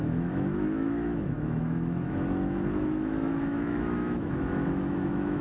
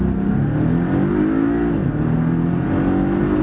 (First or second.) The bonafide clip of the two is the second